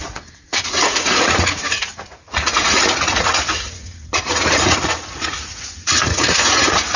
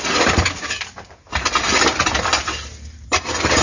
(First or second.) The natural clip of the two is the second